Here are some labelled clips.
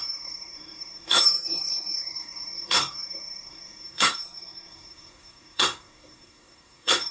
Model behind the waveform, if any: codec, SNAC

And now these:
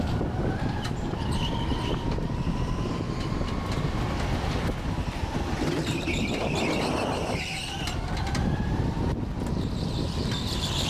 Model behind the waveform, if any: none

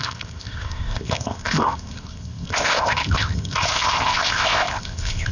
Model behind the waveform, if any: codec, ZipCodec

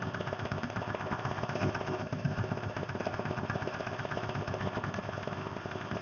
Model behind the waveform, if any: codec, ZipCodec